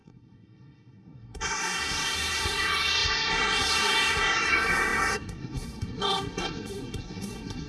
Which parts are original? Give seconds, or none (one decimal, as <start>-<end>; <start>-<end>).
none